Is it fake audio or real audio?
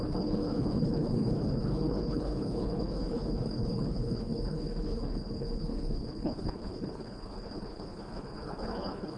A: fake